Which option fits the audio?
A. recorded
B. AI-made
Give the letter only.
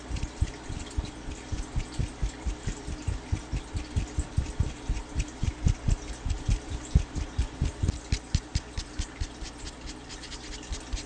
A